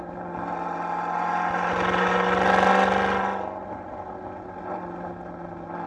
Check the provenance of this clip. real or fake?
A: real